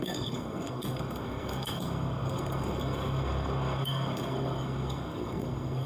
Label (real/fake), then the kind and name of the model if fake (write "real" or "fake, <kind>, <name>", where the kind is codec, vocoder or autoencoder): fake, codec, SNAC